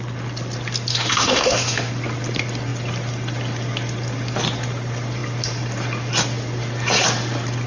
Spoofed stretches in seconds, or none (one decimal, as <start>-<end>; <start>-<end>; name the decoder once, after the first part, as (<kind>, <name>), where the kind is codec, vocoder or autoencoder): 0.9-1.9 (autoencoder, DAC-VAE)